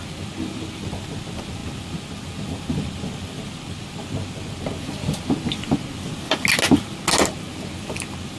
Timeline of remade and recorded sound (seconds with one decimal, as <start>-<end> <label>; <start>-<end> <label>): 0.0-8.4 recorded